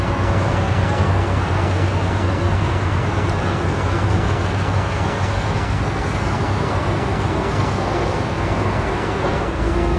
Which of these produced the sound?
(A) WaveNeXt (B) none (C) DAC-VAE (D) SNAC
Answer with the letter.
D